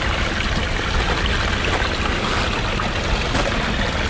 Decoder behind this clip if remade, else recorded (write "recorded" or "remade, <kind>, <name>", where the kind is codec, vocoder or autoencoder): recorded